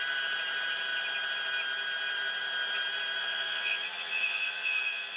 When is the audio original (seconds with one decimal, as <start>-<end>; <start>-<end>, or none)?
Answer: 0.0-3.2